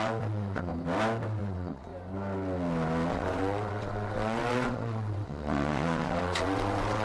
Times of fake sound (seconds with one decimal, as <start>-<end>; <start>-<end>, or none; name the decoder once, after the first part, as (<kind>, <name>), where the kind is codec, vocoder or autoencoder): 0.0-0.7 (vocoder, WaveNeXt); 1.4-1.9; 3.1-7.0